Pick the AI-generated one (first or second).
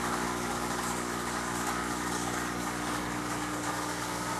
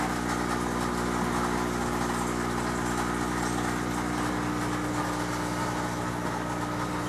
first